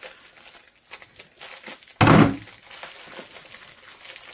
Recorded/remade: recorded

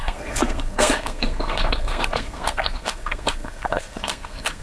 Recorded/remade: remade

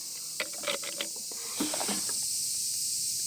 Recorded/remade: recorded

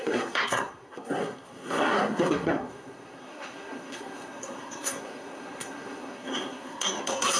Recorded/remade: remade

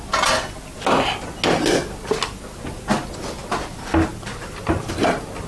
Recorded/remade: recorded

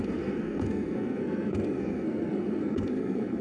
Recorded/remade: remade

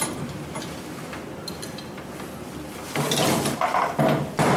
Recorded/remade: recorded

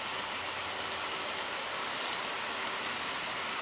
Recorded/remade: recorded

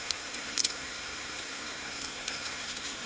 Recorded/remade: remade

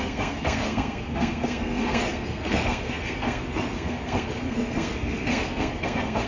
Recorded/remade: remade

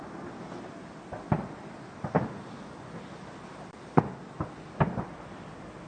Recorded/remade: recorded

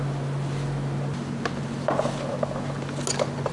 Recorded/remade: recorded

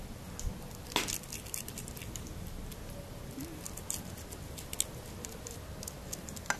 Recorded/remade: recorded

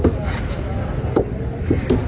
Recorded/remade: recorded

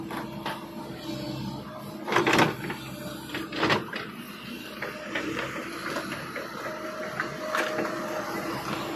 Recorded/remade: recorded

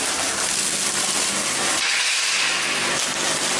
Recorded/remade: recorded